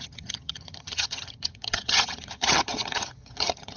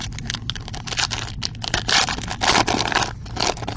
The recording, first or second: second